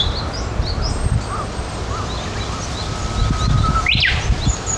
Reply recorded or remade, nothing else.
recorded